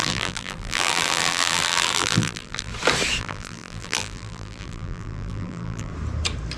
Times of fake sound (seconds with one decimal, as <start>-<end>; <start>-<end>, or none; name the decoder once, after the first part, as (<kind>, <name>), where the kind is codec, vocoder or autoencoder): 0.0-2.7 (vocoder, BigVGAN v2); 3.2-5.9